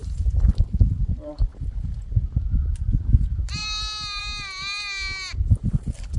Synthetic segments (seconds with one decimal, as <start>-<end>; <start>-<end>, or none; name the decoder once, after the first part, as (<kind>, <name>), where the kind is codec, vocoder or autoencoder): none